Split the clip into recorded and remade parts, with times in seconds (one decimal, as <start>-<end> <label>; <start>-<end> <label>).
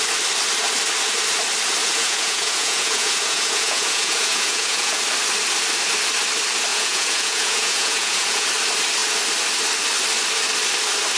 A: 0.0-1.8 recorded; 1.8-5.0 remade; 5.0-6.7 recorded; 6.7-8.5 remade; 8.5-11.2 recorded